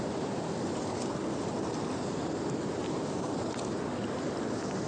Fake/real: real